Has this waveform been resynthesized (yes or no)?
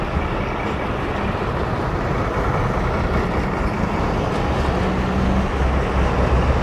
no